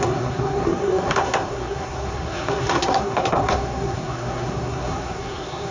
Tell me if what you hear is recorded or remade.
remade